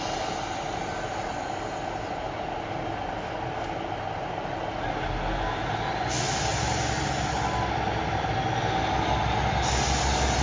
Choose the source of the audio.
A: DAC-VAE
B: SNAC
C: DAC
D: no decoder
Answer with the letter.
D